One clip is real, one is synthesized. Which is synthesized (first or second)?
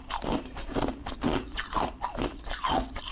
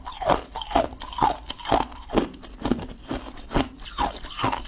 first